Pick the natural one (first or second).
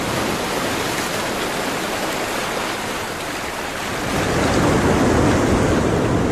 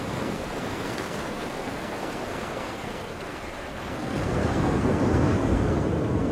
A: first